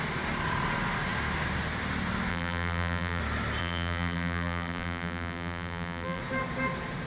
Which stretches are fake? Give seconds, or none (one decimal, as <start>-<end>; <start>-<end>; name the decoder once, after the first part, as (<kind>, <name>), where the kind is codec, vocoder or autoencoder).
2.3-3.2 (vocoder, BigVGAN v2); 3.6-6.2